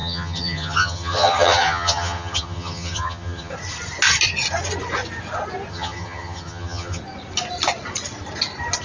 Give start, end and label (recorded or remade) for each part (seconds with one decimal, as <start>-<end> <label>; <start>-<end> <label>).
0.0-3.5 remade; 3.5-5.7 recorded; 5.7-7.0 remade; 7.0-8.8 recorded